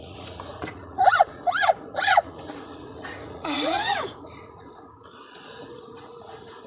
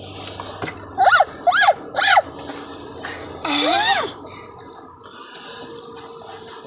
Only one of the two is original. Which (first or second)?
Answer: second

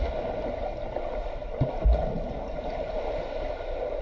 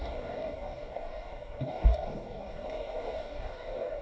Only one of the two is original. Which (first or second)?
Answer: first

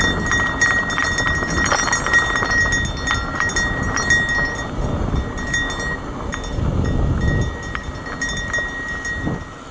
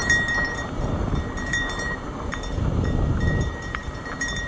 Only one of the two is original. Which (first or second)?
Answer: first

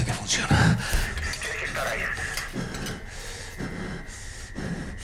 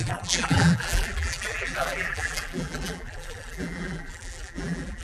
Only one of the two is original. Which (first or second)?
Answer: first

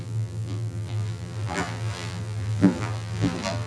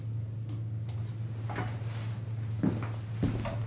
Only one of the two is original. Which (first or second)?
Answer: second